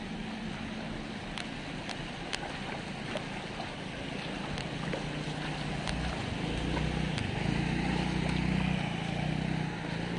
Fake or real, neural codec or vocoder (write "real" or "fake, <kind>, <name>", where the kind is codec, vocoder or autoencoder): real